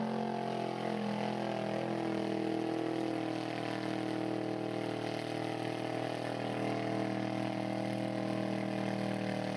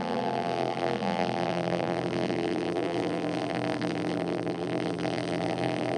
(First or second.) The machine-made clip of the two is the second